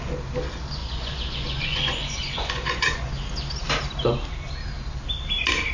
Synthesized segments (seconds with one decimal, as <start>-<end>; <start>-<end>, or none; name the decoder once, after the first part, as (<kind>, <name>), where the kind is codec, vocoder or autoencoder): 0.8-3.1 (vocoder, Vocos)